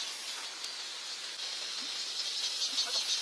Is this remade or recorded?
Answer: recorded